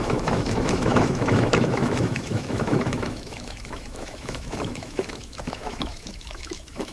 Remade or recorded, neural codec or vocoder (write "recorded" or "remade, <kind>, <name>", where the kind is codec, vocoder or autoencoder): remade, autoencoder, DAC-VAE